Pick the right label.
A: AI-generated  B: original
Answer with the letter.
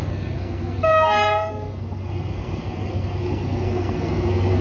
A